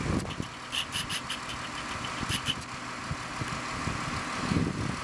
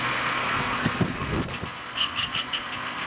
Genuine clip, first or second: first